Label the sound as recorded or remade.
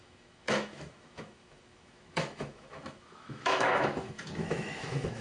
remade